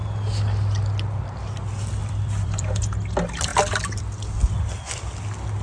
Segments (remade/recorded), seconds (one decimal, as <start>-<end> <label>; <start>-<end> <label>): 0.0-2.0 recorded; 2.0-2.8 remade; 2.8-5.6 recorded